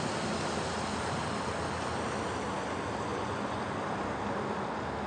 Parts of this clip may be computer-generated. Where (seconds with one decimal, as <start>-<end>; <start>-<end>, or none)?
3.1-3.6